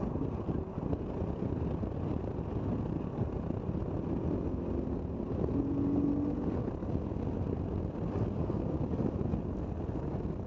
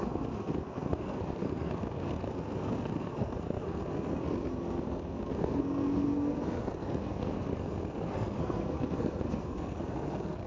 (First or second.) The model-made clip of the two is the second